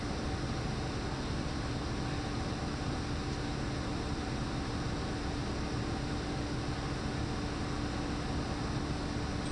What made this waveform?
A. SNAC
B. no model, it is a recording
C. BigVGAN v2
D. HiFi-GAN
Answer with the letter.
B